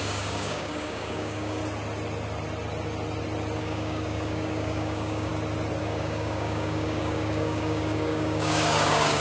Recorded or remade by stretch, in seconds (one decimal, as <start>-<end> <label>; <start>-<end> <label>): 0.0-1.6 remade; 1.6-3.6 recorded; 3.6-5.3 remade; 5.3-5.8 recorded; 5.8-9.2 remade

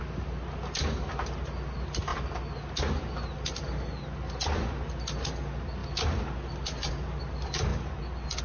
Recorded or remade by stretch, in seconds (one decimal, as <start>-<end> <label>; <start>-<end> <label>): 0.0-8.4 recorded

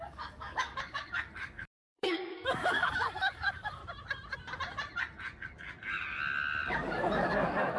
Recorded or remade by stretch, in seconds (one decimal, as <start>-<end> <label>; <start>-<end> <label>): 0.0-3.8 remade; 3.8-6.7 recorded; 6.7-7.8 remade

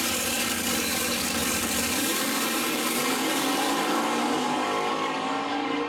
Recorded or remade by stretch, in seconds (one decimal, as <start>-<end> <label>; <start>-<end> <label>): 0.0-5.9 remade